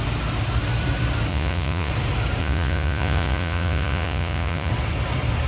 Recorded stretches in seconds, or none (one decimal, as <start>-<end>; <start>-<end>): 0.0-1.3; 1.9-2.4; 4.7-5.5